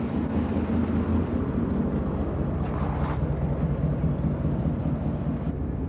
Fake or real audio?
real